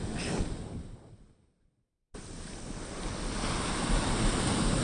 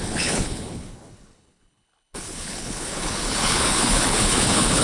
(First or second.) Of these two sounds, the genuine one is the first